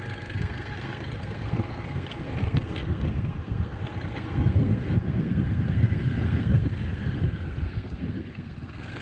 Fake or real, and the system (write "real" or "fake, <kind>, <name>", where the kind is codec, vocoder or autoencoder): fake, codec, SNAC